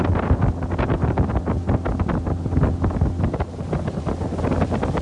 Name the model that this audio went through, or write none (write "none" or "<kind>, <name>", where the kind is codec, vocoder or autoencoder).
none